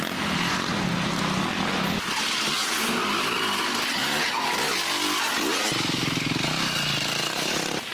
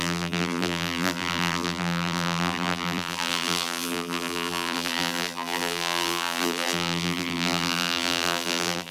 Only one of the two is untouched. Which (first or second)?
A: first